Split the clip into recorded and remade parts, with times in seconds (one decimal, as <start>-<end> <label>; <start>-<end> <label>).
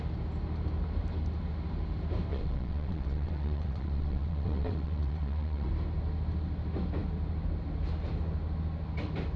0.0-2.3 recorded; 2.3-5.7 remade; 5.7-9.4 recorded